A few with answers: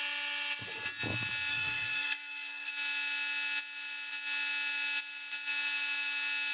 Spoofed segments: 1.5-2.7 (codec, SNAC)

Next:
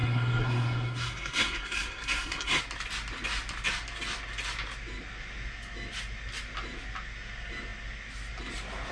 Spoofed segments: 0.0-2.6 (codec, SNAC)

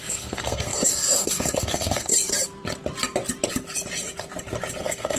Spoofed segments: 0.0-2.1 (codec, SNAC); 4.8-5.2

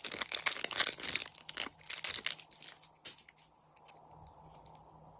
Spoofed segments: none

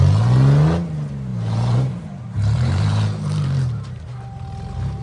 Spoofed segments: 1.3-4.1 (vocoder, BigVGAN v2)

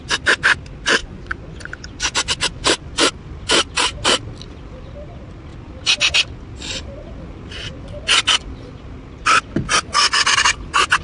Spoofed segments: 1.0-3.1 (vocoder, Vocos)

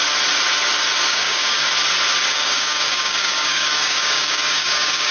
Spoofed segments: 1.1-1.6 (codec, DAC); 2.3-5.1